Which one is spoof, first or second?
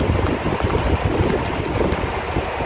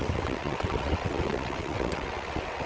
second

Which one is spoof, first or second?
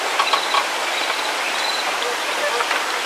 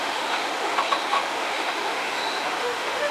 second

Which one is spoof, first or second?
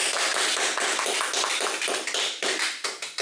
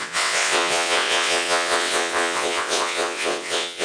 second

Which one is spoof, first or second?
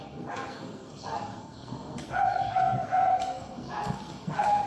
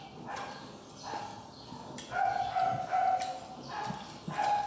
first